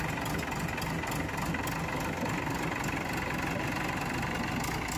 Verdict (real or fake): real